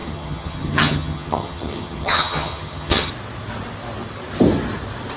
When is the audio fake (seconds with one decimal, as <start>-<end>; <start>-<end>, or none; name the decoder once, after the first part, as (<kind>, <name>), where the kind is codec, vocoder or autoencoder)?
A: 0.0-3.1 (vocoder, HiFi-GAN)